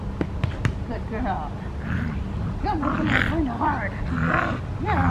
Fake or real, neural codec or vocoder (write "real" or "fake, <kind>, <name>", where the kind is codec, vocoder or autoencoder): fake, vocoder, BigVGAN v2